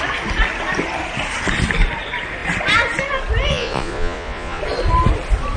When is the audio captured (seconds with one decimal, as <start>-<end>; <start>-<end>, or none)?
0.0-3.5; 4.6-5.6